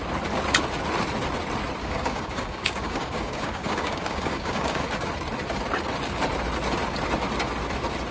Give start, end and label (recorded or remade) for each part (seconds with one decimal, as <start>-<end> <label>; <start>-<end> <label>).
0.0-1.8 recorded; 1.8-4.9 remade; 4.9-8.1 recorded